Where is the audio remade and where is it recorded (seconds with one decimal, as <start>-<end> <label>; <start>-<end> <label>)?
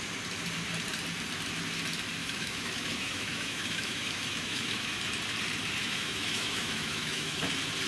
0.0-2.2 recorded; 2.2-5.0 remade; 5.0-5.8 recorded; 5.8-7.4 remade; 7.4-7.9 recorded